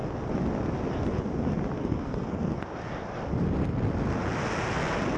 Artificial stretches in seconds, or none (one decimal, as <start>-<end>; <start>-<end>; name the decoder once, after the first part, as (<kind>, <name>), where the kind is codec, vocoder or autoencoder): 1.8-2.6 (codec, SNAC)